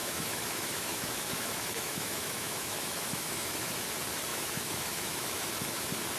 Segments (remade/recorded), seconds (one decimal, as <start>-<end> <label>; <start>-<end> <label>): 0.0-3.7 remade; 3.7-4.3 recorded; 4.3-5.5 remade; 5.5-6.2 recorded